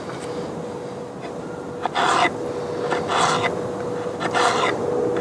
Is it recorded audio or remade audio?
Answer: recorded